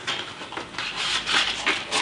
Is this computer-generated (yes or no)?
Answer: no